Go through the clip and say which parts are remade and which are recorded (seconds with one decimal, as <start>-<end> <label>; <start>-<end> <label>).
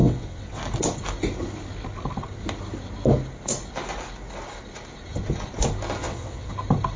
0.0-0.6 remade; 0.6-6.0 recorded; 6.0-6.5 remade; 6.5-7.0 recorded